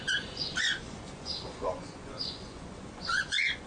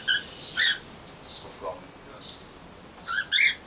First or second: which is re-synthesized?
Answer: first